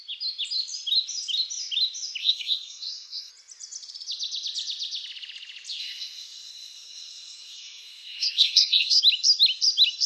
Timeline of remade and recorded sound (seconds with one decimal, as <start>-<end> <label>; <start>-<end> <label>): 0.0-2.2 recorded; 2.2-3.3 remade; 3.3-5.8 recorded; 5.8-9.0 remade; 9.0-10.1 recorded